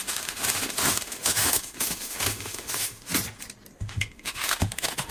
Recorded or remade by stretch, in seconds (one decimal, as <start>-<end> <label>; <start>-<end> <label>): 0.0-3.1 remade; 3.1-3.8 recorded; 3.8-5.1 remade